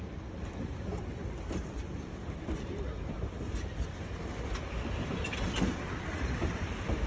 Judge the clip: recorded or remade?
recorded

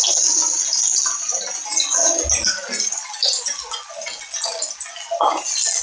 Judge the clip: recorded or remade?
recorded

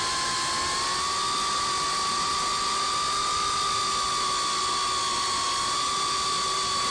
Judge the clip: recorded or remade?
recorded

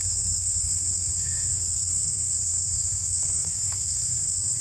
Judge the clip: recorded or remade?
remade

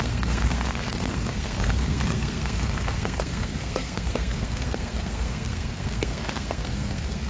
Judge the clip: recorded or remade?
remade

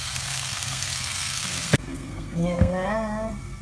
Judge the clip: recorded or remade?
remade